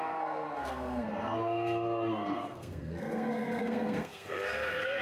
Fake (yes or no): yes